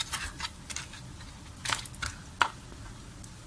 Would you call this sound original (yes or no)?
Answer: yes